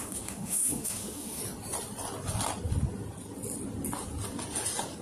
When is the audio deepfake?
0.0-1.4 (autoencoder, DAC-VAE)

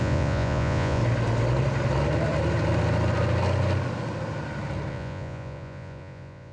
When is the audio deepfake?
0.0-1.0 (vocoder, Vocos); 4.9-6.5